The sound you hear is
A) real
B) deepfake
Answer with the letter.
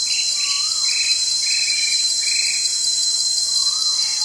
A